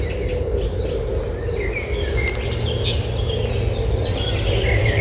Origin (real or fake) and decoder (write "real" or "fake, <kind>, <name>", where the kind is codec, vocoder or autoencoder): real